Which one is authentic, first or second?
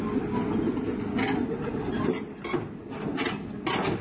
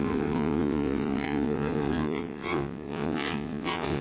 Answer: first